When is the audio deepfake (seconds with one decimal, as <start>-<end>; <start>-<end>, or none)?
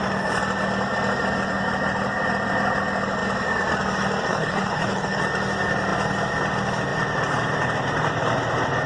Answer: 4.3-5.2